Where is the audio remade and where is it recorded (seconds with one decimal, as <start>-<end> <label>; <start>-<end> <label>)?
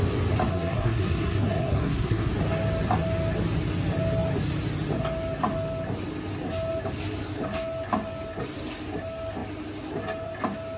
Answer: 0.0-0.5 recorded; 0.5-2.3 remade; 2.3-10.8 recorded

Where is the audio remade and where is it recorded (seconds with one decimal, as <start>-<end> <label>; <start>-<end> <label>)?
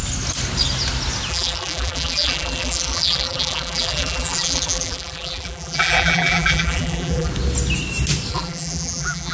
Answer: 0.0-1.3 recorded; 1.3-7.3 remade; 7.3-8.3 recorded; 8.3-9.3 remade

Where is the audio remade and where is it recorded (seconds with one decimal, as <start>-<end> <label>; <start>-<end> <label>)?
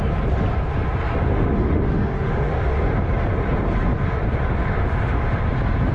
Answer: 0.0-1.2 recorded; 1.2-2.7 remade; 2.7-4.8 recorded; 4.8-5.4 remade; 5.4-5.9 recorded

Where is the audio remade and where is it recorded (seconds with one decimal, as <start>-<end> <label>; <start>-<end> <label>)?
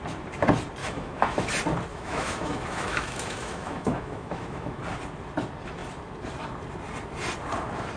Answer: 0.0-0.8 recorded; 0.8-1.5 remade; 1.5-1.9 recorded; 1.9-4.8 remade; 4.8-8.0 recorded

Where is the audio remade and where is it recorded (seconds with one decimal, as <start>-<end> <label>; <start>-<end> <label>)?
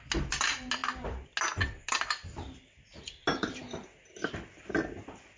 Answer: 0.0-5.4 recorded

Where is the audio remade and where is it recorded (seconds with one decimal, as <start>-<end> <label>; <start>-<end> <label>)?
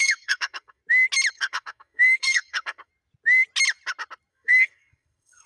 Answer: 0.0-0.8 remade; 0.8-1.3 recorded; 1.3-2.9 remade; 2.9-4.3 recorded; 4.3-5.5 remade